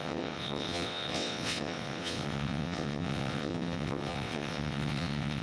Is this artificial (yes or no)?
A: yes